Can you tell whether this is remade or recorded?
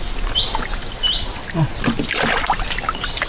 recorded